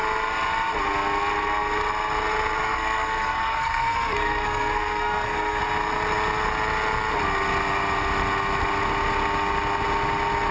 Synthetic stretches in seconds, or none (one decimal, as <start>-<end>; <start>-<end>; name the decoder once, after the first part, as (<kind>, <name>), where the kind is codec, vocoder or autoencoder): 2.6-5.6 (codec, SNAC)